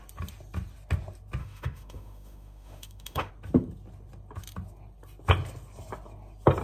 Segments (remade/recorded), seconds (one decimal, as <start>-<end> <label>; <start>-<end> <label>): 0.0-1.4 recorded; 1.4-3.3 remade; 3.3-6.6 recorded